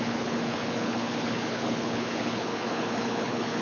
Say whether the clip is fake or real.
fake